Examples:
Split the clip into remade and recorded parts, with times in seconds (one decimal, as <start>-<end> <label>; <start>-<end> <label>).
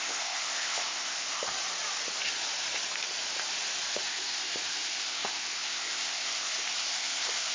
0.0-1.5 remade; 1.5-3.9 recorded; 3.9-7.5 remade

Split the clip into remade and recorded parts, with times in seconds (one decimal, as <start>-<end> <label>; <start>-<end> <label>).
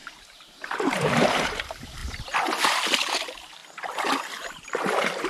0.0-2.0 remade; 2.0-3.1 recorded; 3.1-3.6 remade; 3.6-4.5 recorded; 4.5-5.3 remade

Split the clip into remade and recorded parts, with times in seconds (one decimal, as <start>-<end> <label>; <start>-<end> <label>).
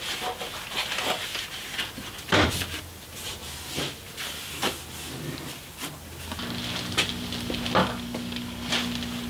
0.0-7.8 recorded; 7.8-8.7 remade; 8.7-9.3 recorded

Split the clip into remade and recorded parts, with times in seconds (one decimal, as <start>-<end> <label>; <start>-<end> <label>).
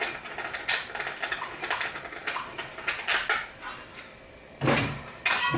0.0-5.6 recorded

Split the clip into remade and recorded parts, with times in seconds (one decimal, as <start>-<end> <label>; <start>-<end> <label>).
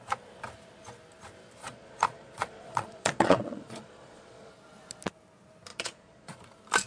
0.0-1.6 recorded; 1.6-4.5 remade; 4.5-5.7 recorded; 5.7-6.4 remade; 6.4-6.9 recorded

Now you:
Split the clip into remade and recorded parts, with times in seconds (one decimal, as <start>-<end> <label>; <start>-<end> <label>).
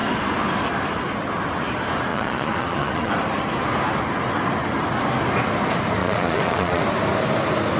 0.0-2.1 recorded; 2.1-3.1 remade; 3.1-6.0 recorded; 6.0-6.8 remade; 6.8-7.8 recorded